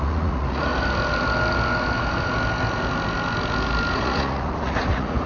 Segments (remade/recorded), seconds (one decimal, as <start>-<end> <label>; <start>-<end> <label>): 0.0-0.7 remade; 0.7-3.9 recorded; 3.9-5.3 remade